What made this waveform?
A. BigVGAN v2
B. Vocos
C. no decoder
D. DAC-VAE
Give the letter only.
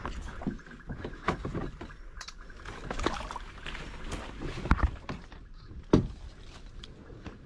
C